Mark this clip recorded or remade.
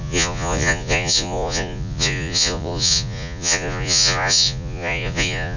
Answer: remade